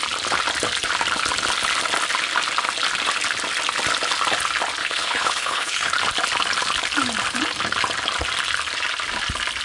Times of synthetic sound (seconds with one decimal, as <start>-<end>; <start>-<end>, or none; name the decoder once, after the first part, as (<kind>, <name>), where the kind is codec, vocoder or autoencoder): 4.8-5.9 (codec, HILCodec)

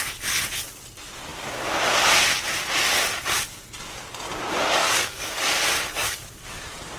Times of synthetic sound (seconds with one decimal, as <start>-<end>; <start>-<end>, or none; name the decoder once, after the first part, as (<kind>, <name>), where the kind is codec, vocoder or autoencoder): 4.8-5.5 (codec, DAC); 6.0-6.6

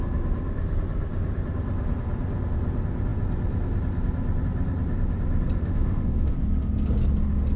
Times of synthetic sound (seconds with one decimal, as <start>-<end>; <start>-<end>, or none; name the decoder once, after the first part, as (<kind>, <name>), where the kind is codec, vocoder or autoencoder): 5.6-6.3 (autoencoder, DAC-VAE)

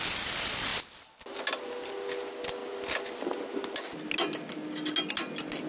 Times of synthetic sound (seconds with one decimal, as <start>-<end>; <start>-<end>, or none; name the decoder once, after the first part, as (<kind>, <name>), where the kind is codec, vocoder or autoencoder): none

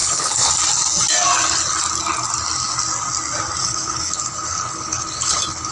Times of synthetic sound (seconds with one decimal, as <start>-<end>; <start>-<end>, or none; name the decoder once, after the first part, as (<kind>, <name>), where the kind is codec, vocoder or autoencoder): 0.0-0.5 (codec, HILCodec); 3.6-5.7

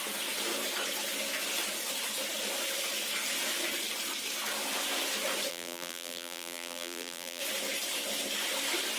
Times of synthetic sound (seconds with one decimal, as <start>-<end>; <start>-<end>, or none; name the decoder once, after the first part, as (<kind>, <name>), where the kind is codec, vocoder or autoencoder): 5.5-7.4 (vocoder, BigVGAN v2)

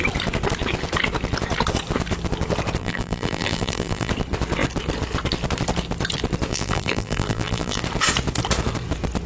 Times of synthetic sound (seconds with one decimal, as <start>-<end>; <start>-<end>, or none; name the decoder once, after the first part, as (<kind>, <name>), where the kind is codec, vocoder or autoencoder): 2.8-4.1 (vocoder, BigVGAN v2); 6.5-7.8